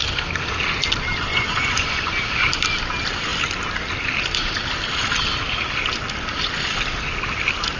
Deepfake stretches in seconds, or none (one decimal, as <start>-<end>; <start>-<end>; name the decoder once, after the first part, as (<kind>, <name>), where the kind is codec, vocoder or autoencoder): 1.3-2.2 (vocoder, Vocos)